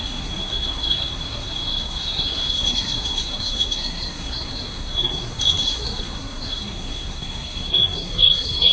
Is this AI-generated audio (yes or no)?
yes